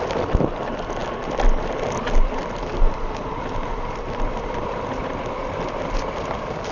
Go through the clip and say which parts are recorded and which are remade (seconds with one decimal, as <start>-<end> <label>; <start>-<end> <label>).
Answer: 0.0-6.7 recorded